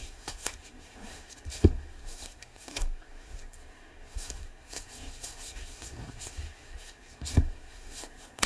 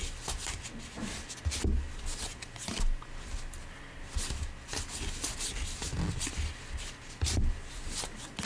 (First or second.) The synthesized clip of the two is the first